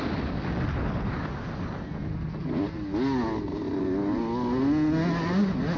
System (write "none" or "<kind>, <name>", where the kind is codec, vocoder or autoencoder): none